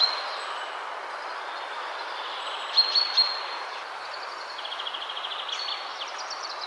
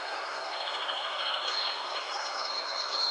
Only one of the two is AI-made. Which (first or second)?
second